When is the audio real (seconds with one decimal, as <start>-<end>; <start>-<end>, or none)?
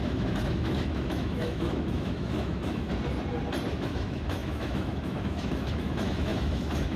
2.9-3.7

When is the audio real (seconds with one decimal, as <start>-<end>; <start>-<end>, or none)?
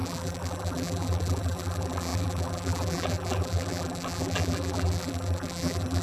none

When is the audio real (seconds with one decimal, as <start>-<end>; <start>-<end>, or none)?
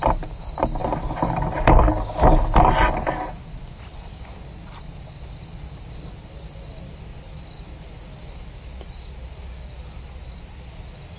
0.0-11.2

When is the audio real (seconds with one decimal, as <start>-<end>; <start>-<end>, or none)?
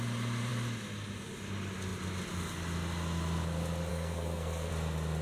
0.0-3.9; 4.7-5.2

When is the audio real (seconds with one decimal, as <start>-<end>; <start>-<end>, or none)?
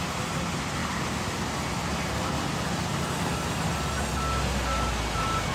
0.0-5.5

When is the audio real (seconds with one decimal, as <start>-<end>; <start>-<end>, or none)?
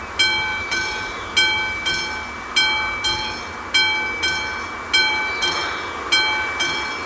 0.0-0.5; 1.2-5.0; 5.7-7.1